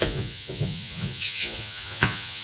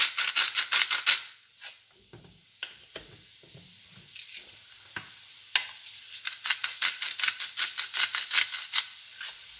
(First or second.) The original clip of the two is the second